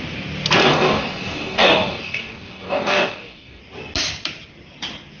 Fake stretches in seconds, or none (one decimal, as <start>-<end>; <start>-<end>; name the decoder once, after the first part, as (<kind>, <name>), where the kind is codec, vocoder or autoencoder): 0.6-3.6 (codec, DAC)